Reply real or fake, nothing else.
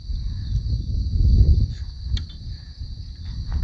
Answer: real